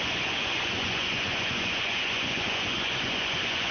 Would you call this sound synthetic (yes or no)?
yes